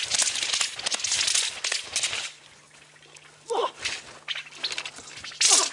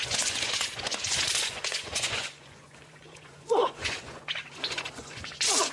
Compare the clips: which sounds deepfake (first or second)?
second